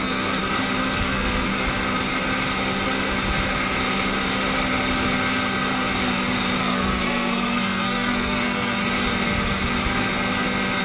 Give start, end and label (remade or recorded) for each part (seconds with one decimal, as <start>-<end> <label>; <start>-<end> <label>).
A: 0.0-0.4 remade; 0.4-1.0 recorded; 1.0-1.5 remade; 1.5-6.6 recorded; 6.6-8.8 remade; 8.8-10.8 recorded